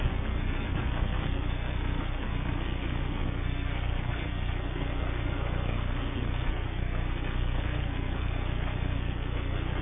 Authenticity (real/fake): fake